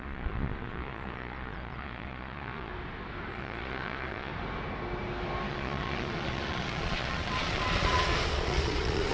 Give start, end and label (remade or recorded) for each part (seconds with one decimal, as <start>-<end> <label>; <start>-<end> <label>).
0.0-2.7 remade; 2.7-3.3 recorded; 3.3-4.3 remade; 4.3-5.5 recorded; 5.5-9.1 remade